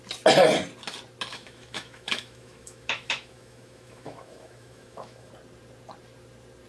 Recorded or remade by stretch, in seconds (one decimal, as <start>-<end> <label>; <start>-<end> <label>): 0.0-1.3 recorded; 1.3-5.3 remade; 5.3-6.7 recorded